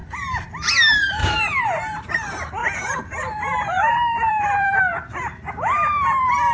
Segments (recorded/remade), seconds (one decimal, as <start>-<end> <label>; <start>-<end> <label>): 0.0-0.5 remade; 0.5-1.2 recorded; 1.2-2.0 remade; 2.0-2.6 recorded; 2.6-4.8 remade; 4.8-6.5 recorded